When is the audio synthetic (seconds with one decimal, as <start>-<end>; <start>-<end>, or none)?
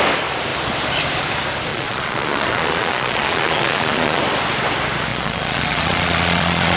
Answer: 1.7-4.2; 5.1-6.8